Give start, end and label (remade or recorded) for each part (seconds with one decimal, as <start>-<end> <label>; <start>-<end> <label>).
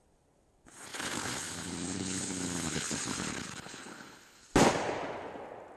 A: 0.0-0.9 recorded; 0.9-4.4 remade; 4.4-5.8 recorded